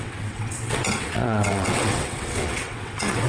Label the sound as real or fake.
fake